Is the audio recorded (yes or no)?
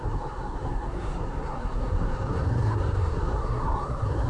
no